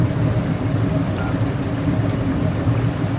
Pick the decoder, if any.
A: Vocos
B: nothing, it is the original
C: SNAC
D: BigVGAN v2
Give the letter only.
D